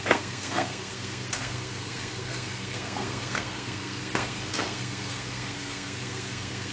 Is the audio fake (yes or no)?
yes